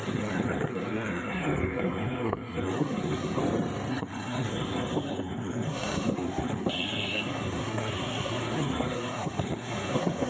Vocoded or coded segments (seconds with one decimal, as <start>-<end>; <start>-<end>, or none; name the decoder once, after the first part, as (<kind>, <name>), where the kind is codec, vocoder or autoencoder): 0.0-3.4 (codec, SNAC); 3.9-10.3